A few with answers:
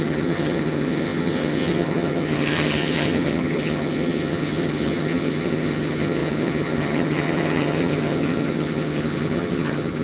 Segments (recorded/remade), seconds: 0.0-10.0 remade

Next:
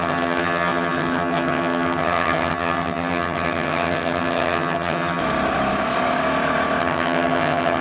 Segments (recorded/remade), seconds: 0.0-5.2 remade; 5.2-6.8 recorded; 6.8-7.8 remade

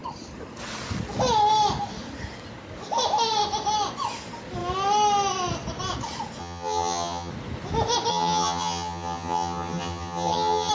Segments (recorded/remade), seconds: 0.0-6.4 recorded; 6.4-7.3 remade; 7.3-8.1 recorded; 8.1-10.7 remade